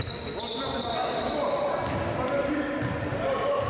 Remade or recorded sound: recorded